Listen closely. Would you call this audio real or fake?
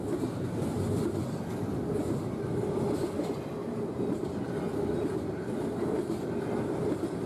real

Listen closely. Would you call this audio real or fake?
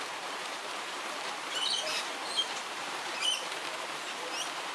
fake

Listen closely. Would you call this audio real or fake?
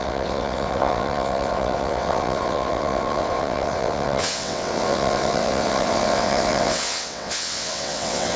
fake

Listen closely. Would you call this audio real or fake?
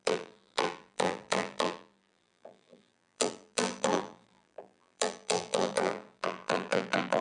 fake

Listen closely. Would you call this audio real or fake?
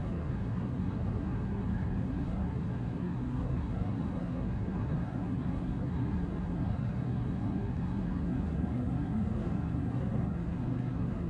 fake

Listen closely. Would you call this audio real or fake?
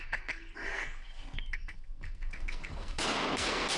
fake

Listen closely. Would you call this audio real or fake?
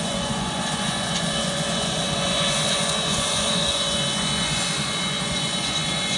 fake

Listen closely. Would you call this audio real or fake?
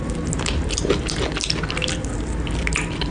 real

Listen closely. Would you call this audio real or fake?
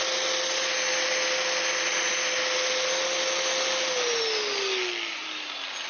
real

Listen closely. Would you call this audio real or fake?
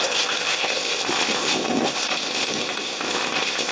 fake